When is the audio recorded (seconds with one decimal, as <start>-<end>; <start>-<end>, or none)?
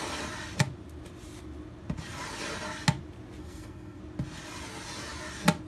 0.0-3.4; 4.0-5.7